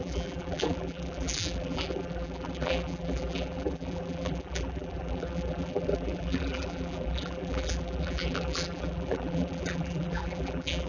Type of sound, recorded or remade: remade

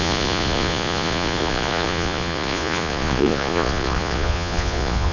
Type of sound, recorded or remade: remade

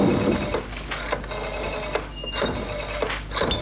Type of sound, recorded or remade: recorded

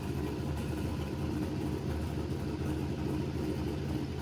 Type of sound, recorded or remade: recorded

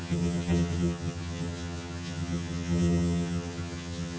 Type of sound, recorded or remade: remade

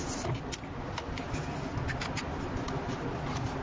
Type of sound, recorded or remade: recorded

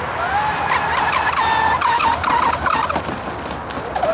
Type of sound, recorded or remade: recorded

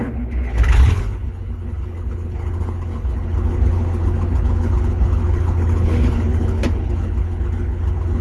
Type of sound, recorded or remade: remade